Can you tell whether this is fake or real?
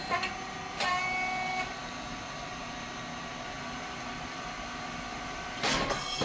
real